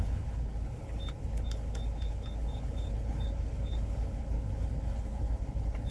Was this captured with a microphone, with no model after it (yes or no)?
no